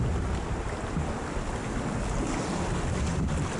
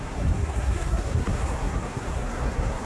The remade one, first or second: second